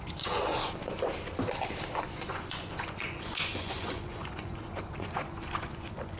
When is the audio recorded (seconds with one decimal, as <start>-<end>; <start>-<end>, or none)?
0.5-1.9